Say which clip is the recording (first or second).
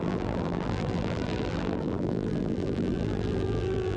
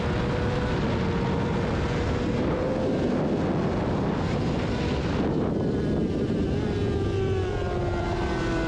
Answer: second